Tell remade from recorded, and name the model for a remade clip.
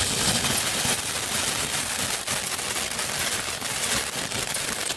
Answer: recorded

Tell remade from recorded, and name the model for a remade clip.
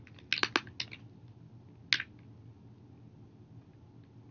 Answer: recorded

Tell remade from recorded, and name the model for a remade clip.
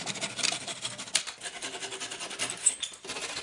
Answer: recorded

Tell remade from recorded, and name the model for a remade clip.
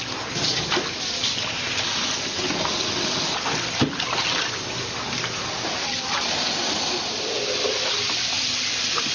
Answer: recorded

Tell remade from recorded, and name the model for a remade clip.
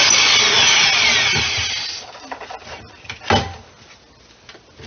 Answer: recorded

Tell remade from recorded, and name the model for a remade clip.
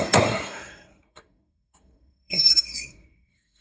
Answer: remade, codec, SNAC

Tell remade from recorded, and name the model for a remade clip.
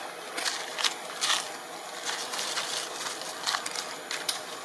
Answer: recorded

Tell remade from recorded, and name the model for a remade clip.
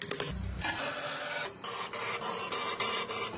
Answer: recorded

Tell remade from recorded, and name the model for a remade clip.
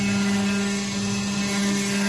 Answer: recorded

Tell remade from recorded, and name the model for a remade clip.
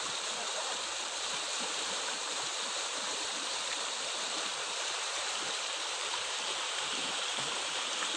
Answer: remade, vocoder, BigVGAN v2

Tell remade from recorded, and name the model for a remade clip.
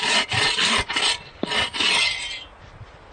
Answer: recorded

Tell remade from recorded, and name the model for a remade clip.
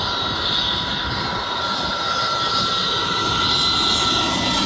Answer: recorded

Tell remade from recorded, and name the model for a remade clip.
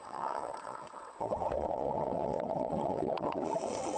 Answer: remade, vocoder, WaveNeXt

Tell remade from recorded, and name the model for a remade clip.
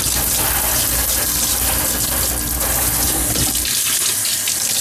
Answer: recorded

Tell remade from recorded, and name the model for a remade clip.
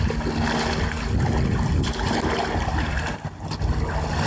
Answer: recorded